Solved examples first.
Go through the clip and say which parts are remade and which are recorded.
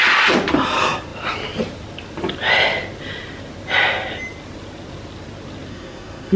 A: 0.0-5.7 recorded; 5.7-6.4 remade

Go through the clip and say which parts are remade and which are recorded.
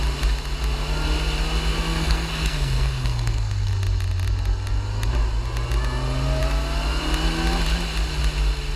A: 0.0-1.7 recorded; 1.7-3.7 remade; 3.7-8.8 recorded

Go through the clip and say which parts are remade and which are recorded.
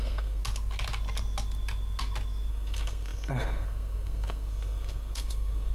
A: 0.0-0.4 remade; 0.4-2.5 recorded; 2.5-5.7 remade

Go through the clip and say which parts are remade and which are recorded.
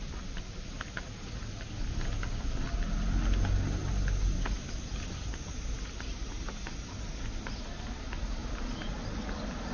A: 0.0-9.7 recorded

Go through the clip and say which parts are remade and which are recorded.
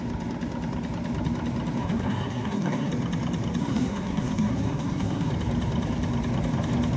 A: 0.0-1.8 recorded; 1.8-2.9 remade; 2.9-3.6 recorded; 3.6-5.3 remade; 5.3-7.0 recorded